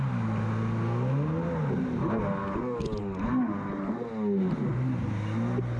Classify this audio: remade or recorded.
recorded